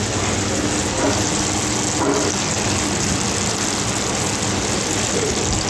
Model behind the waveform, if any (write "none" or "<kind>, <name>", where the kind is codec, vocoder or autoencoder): none